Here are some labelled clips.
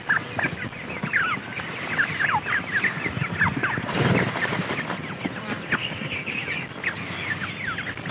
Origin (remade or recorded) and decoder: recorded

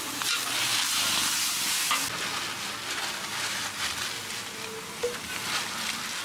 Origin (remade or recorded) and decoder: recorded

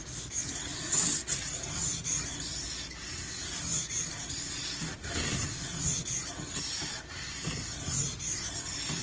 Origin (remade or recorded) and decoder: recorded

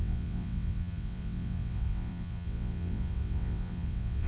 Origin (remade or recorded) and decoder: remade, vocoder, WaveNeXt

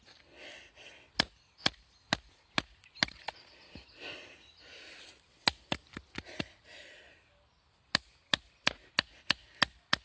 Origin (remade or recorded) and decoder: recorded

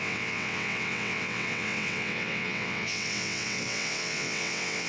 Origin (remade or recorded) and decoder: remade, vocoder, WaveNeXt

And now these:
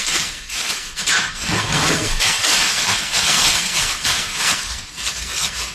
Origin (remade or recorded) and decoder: remade, codec, SNAC